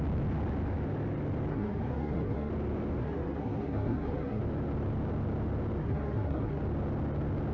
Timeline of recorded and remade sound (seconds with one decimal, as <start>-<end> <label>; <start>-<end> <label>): 0.0-1.5 recorded; 1.5-2.5 remade; 2.5-3.0 recorded; 3.0-4.4 remade; 4.4-5.8 recorded; 5.8-6.6 remade; 6.6-7.5 recorded